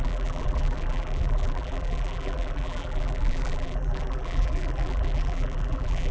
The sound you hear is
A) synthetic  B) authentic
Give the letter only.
A